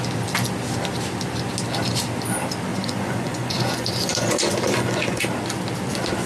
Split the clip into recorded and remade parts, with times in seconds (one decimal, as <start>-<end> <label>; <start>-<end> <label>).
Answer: 0.0-2.7 recorded; 2.7-5.2 remade; 5.2-6.3 recorded